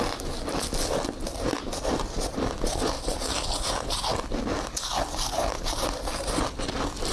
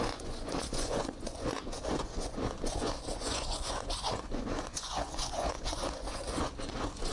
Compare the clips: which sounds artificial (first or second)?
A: second